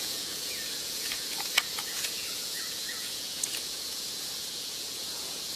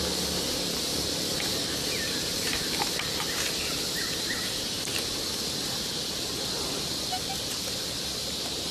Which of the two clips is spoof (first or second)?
first